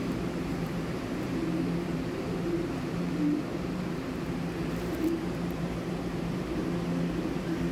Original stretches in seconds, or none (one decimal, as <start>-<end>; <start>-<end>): 6.6-7.2